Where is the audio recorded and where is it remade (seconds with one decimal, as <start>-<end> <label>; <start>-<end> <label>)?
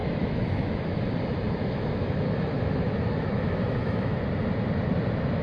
0.0-1.0 remade; 1.0-1.6 recorded; 1.6-4.2 remade; 4.2-5.4 recorded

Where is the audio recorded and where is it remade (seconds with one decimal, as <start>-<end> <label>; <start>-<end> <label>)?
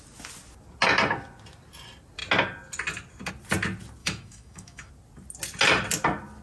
0.0-4.0 recorded; 4.0-4.9 remade; 4.9-6.4 recorded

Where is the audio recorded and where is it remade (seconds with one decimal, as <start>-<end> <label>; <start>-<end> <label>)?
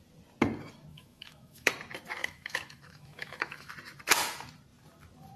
0.0-0.9 recorded; 0.9-1.7 remade; 1.7-2.2 recorded; 2.2-3.7 remade; 3.7-5.4 recorded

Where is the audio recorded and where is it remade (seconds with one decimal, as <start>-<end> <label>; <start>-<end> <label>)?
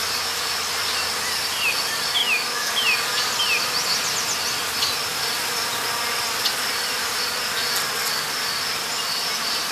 0.0-2.2 recorded; 2.2-2.7 remade; 2.7-9.7 recorded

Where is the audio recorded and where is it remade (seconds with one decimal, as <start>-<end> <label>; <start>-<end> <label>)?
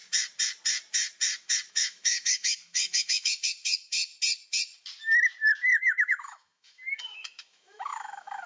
0.0-1.7 recorded; 1.7-4.1 remade; 4.1-5.8 recorded; 5.8-8.5 remade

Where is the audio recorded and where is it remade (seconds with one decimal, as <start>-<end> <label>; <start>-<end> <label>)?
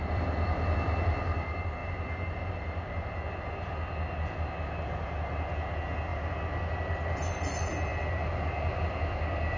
0.0-9.6 recorded